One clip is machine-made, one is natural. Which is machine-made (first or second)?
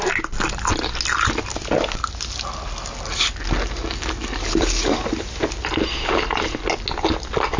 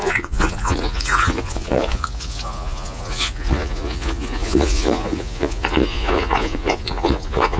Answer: second